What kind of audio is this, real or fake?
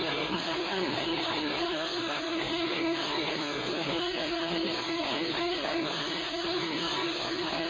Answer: fake